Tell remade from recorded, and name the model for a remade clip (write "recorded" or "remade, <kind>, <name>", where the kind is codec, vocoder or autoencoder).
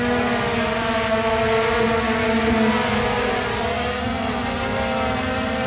recorded